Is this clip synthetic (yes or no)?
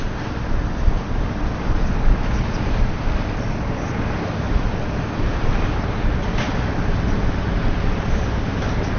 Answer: no